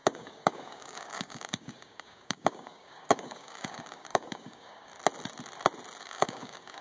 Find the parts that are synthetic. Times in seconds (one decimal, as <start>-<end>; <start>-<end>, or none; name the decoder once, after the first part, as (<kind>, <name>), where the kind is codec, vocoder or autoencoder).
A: 0.0-4.9 (codec, DAC); 6.0-6.8